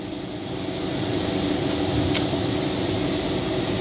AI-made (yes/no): no